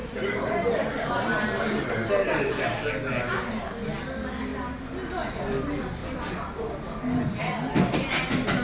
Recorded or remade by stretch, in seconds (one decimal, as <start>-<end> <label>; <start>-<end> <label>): 0.0-2.8 remade; 2.8-6.0 recorded; 6.0-7.0 remade; 7.0-8.6 recorded